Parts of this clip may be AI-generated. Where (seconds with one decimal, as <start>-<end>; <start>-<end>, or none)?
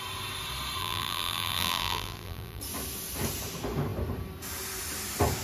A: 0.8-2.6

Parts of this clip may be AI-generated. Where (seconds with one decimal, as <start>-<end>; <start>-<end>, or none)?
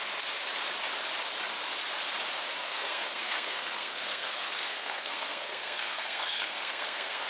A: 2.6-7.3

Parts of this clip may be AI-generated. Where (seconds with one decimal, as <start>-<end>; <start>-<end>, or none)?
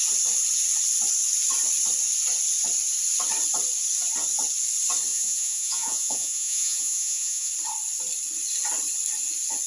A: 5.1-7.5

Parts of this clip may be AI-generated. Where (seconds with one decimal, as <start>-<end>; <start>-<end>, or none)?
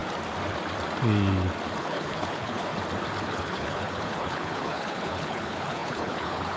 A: 1.8-2.7; 3.2-6.6